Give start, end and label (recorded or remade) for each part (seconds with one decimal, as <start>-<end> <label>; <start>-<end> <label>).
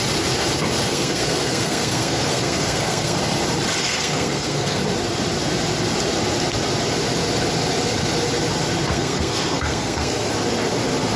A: 0.0-0.9 recorded; 0.9-3.2 remade; 3.2-3.8 recorded; 3.8-4.8 remade; 4.8-8.9 recorded; 8.9-10.3 remade; 10.3-11.2 recorded